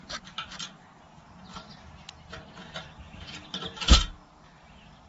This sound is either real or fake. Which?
fake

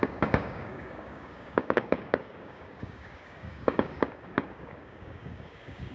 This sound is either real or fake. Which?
fake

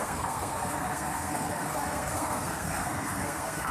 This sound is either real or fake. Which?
fake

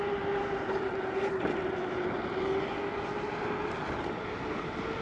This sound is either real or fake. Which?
real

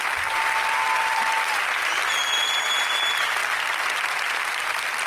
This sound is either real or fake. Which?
real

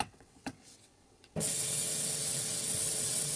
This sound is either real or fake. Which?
fake